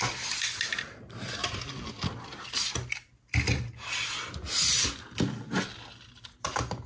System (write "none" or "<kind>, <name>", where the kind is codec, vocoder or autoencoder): none